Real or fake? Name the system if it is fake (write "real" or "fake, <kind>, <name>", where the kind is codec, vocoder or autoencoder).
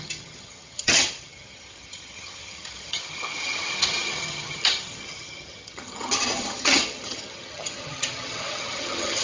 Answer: fake, vocoder, HiFi-GAN